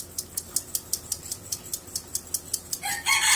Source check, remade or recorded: recorded